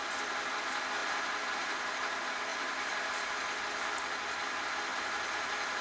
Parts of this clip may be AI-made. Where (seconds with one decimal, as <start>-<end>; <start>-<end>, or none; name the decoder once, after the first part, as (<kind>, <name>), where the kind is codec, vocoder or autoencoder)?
1.0-1.9 (vocoder, BigVGAN v2); 2.5-3.3; 4.9-5.8